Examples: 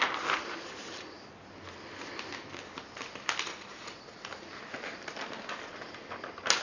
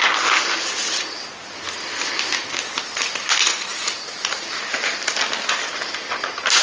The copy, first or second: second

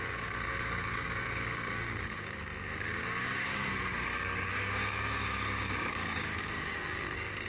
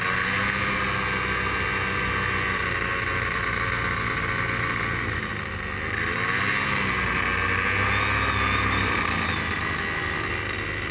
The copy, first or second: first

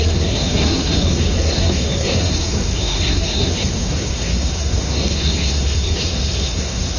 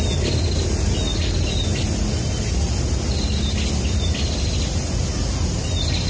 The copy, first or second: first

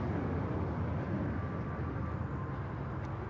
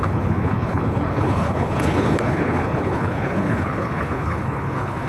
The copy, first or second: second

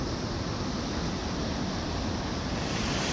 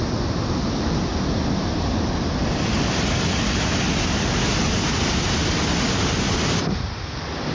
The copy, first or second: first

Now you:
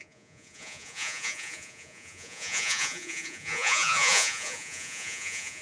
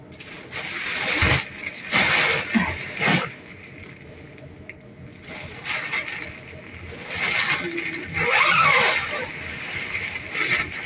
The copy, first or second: first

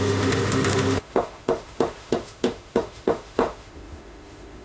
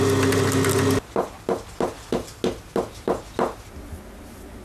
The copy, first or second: first